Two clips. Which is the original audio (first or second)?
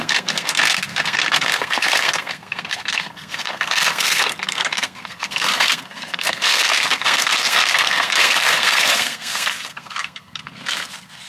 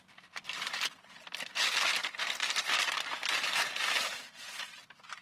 second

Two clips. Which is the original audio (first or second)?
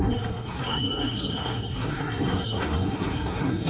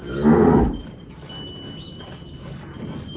second